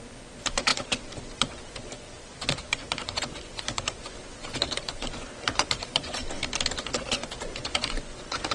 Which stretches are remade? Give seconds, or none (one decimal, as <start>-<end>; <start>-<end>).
0.0-6.2; 6.8-8.5